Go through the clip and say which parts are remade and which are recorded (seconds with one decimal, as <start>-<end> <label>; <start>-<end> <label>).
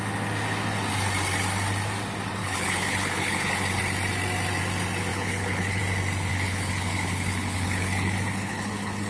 0.0-2.4 recorded; 2.4-3.8 remade; 3.8-5.1 recorded; 5.1-5.8 remade; 5.8-6.3 recorded; 6.3-9.1 remade